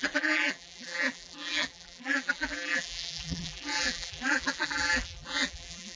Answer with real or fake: fake